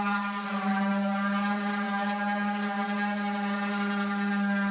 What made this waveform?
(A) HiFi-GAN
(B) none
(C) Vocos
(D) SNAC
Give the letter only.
B